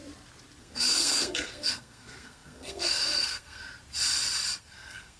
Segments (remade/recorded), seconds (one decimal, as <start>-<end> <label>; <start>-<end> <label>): 0.0-0.6 recorded; 0.6-3.6 remade; 3.6-4.6 recorded; 4.6-5.2 remade